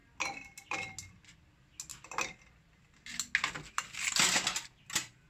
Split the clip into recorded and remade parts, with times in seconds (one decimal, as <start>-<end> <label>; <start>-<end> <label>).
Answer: 0.0-5.3 recorded